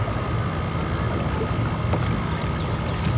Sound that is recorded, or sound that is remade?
recorded